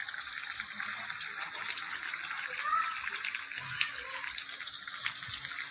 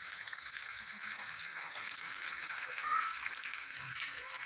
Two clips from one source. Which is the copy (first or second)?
second